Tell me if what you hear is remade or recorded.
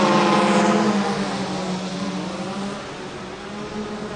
recorded